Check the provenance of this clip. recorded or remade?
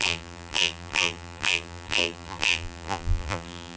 remade